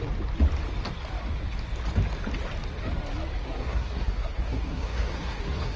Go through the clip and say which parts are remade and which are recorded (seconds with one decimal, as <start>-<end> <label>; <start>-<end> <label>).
0.0-3.4 recorded; 3.4-5.8 remade